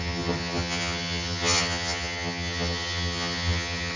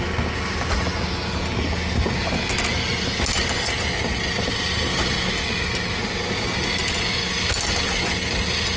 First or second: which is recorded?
second